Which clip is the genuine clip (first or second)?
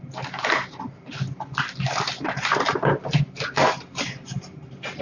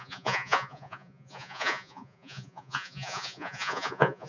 first